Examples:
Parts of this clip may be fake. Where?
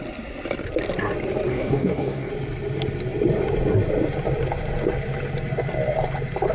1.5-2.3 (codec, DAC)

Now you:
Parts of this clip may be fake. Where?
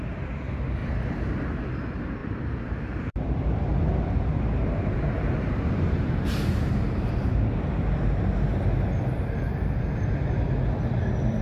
0.8-1.3 (vocoder, BigVGAN v2); 2.2-7.1